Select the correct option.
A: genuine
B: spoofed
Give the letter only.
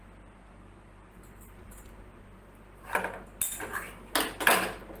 A